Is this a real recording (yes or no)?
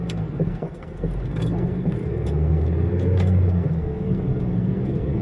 no